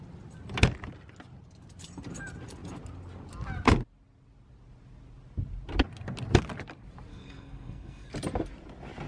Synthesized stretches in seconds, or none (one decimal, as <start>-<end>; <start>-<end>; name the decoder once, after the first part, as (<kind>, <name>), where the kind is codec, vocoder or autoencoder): 7.1-8.1 (codec, SNAC)